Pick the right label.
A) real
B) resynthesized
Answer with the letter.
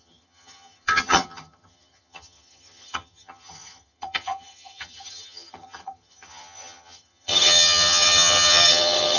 B